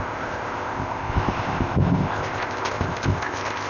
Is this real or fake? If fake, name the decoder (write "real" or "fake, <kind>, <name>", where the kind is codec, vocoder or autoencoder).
fake, codec, ZipCodec